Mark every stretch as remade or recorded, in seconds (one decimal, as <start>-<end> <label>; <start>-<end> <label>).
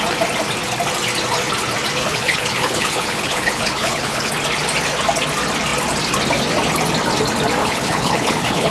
0.0-2.0 recorded; 2.0-4.3 remade; 4.3-7.6 recorded; 7.6-8.7 remade